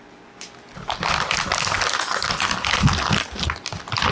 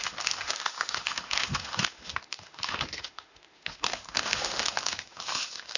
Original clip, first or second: first